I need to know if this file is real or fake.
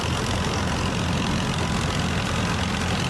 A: real